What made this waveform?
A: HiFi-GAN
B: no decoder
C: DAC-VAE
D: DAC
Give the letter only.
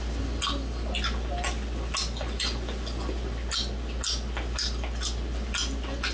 B